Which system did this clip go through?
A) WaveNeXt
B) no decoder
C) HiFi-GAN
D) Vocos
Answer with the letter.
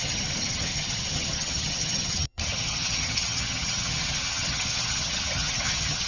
C